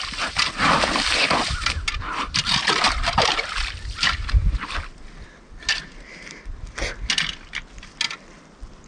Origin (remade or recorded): recorded